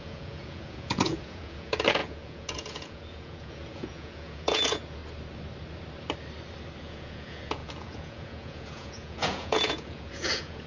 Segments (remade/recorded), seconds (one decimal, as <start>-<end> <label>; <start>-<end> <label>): 0.0-5.0 remade; 5.0-6.8 recorded; 6.8-10.7 remade